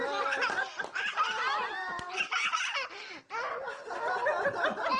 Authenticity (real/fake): real